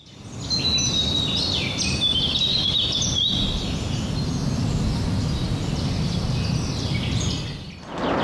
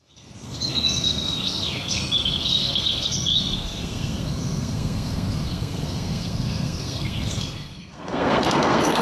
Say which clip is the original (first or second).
first